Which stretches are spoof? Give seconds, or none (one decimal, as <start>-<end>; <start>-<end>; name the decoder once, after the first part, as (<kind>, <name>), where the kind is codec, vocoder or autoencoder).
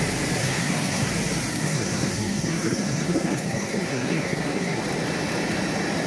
0.4-1.1 (codec, SNAC); 1.5-4.8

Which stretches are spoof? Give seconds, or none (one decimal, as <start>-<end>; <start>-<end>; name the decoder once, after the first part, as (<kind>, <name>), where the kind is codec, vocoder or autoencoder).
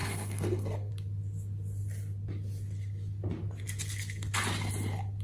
0.0-0.9 (codec, SNAC)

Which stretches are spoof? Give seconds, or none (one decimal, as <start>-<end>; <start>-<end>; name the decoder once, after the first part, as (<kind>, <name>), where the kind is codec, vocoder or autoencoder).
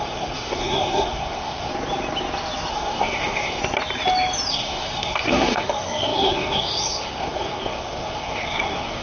0.0-1.7 (codec, SNAC); 2.7-3.6; 4.5-9.0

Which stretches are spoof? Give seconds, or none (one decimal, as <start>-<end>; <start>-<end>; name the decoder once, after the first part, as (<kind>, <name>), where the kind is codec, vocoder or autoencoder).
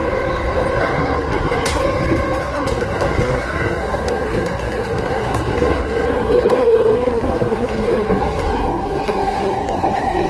0.8-1.8 (codec, SNAC); 2.4-10.3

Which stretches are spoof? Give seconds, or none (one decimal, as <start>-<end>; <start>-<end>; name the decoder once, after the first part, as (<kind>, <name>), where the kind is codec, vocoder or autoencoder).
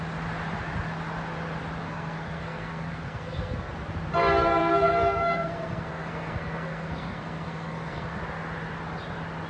1.8-3.7 (codec, SNAC); 4.6-8.2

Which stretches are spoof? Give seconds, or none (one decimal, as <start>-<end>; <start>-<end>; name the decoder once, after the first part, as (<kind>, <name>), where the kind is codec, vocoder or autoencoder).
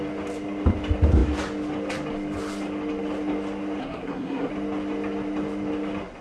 3.8-4.5 (codec, SNAC)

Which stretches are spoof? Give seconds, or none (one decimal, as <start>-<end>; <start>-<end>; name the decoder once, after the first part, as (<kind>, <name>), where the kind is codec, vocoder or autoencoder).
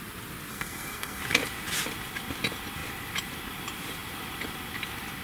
0.5-1.2 (codec, SNAC)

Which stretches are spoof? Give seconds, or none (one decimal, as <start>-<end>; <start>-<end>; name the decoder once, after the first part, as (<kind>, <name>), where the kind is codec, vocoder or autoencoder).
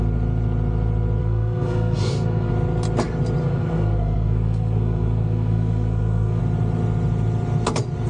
1.2-2.5 (codec, SNAC); 3.4-6.4